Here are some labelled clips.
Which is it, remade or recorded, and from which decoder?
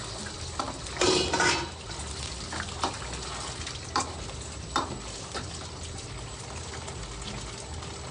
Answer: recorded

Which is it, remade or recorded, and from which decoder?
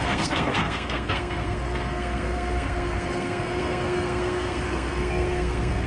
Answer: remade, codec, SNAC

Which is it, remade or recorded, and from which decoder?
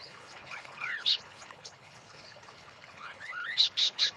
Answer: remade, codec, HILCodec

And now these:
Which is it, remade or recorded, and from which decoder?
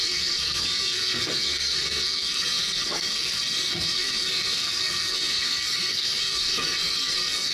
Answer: remade, codec, SNAC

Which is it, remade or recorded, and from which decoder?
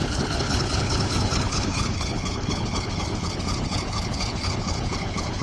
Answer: remade, codec, HILCodec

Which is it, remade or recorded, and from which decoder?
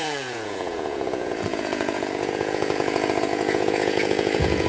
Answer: remade, vocoder, Vocos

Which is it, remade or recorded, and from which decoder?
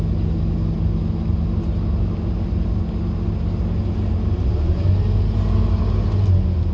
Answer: recorded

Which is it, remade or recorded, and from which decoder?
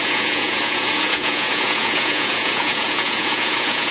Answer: remade, vocoder, Vocos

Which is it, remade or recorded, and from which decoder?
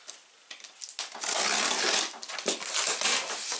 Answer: recorded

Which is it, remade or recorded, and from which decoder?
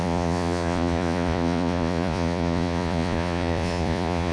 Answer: remade, vocoder, Vocos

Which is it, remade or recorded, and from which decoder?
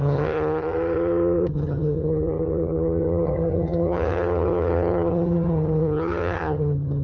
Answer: remade, vocoder, HiFi-GAN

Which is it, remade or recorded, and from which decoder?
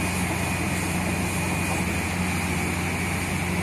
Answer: recorded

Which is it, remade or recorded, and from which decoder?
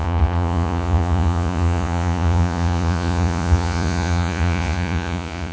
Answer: remade, vocoder, Vocos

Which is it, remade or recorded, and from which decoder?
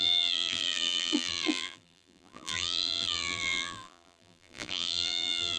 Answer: remade, vocoder, BigVGAN v2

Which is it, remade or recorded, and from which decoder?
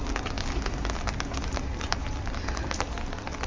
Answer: recorded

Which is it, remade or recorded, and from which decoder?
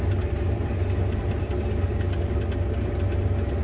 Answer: recorded